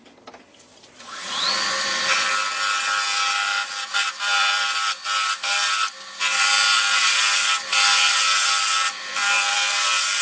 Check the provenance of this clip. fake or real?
fake